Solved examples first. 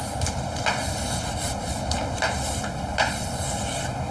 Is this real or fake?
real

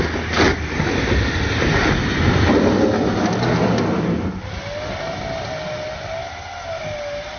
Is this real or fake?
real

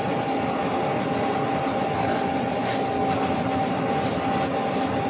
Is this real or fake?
real